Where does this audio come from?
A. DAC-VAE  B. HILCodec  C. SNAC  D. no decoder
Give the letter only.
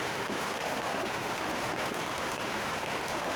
A